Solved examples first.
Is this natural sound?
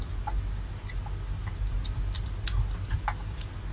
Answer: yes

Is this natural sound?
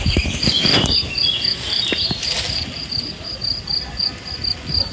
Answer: yes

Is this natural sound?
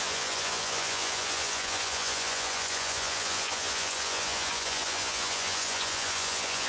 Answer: no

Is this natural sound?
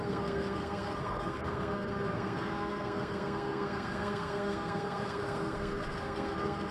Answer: no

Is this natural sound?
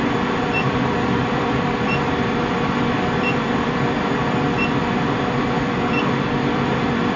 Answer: no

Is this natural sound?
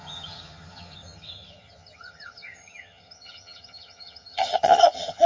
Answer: no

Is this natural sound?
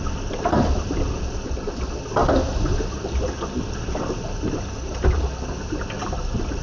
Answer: yes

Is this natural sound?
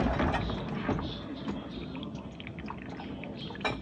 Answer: yes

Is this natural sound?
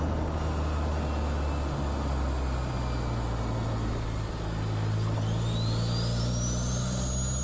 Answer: yes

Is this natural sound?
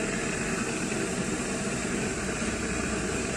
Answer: no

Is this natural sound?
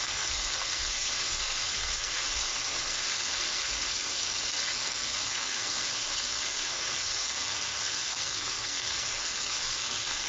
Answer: no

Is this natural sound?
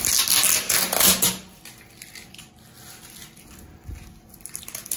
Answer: yes